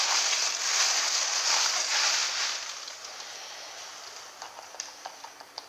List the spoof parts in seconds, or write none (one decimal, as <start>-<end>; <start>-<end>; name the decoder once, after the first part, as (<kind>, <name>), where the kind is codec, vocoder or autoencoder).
none